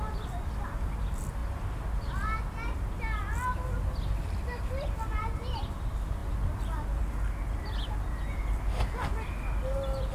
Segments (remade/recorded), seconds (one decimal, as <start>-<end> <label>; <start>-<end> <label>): 0.0-10.1 recorded